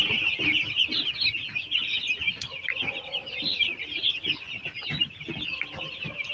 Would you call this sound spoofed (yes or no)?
no